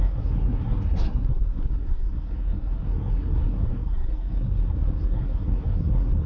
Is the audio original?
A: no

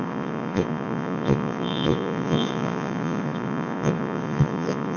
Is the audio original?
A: no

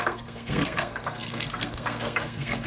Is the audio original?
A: no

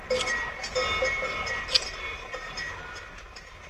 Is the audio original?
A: yes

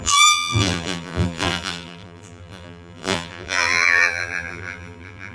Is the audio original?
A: no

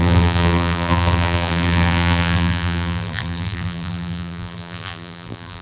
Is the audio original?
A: no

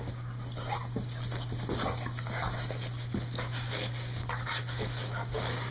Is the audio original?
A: yes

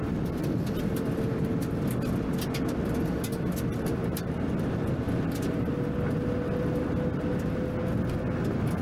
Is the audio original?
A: yes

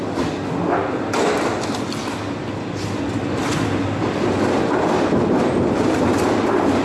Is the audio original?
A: yes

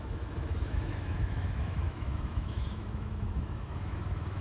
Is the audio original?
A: no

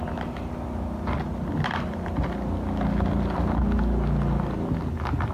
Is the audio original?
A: yes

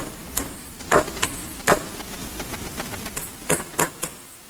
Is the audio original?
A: yes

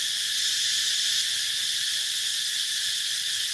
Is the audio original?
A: yes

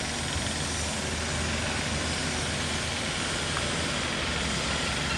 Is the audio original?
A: yes